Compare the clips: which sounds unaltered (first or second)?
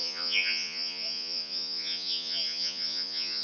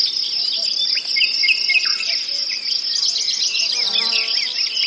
second